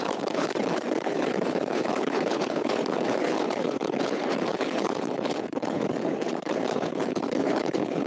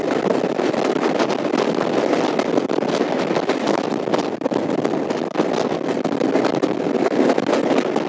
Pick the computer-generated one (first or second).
first